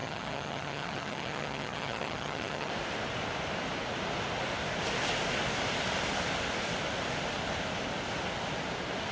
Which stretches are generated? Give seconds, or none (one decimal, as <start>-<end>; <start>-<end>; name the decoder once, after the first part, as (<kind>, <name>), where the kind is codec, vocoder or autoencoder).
0.0-2.7 (vocoder, HiFi-GAN)